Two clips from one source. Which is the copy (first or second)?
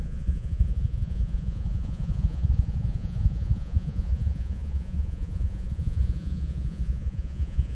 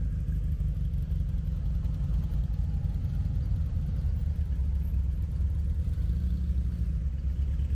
first